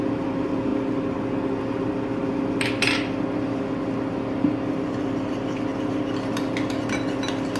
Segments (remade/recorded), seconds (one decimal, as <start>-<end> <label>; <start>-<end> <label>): 0.0-0.7 remade; 0.7-1.6 recorded; 1.6-5.7 remade; 5.7-7.6 recorded